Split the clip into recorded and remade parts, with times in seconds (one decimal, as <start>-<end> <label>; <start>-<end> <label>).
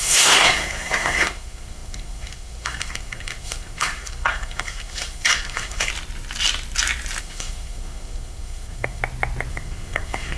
0.0-5.9 remade; 5.9-7.2 recorded; 7.2-9.0 remade; 9.0-9.5 recorded; 9.5-10.4 remade